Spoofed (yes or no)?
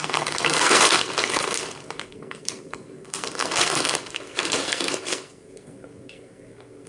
yes